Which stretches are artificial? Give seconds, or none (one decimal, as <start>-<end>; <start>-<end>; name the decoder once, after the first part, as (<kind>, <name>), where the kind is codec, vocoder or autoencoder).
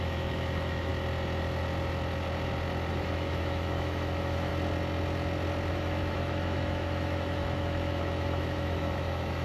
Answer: 0.0-0.9 (autoencoder, DAC-VAE); 2.9-4.5; 5.7-9.4